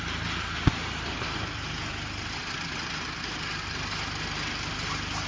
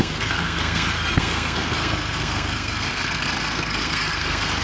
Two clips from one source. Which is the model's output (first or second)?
second